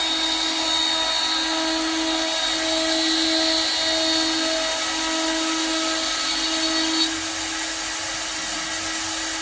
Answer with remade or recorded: recorded